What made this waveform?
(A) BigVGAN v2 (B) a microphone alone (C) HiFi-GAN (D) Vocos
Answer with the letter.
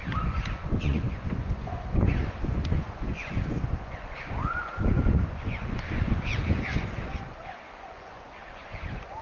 D